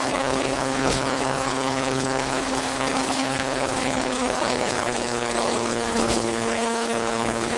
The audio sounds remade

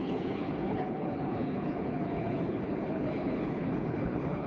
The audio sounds remade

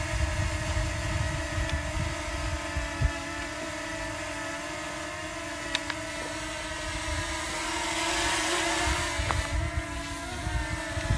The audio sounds recorded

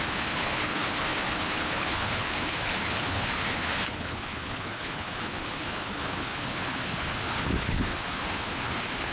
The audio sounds remade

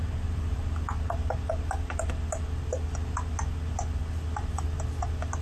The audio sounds recorded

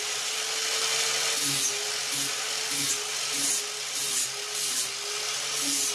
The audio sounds recorded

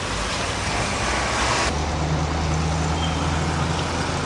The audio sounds recorded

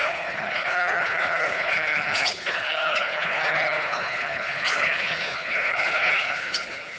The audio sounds remade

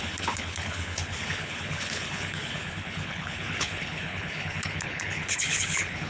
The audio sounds remade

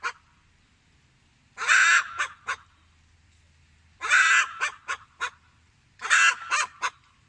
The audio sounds recorded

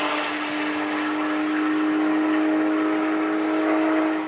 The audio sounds recorded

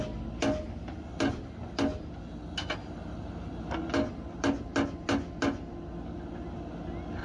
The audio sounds recorded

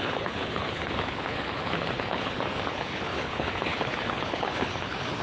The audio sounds remade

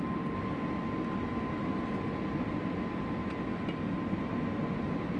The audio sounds recorded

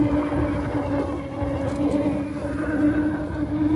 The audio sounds recorded